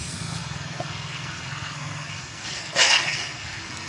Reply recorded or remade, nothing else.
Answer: remade